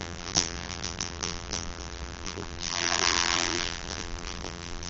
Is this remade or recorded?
remade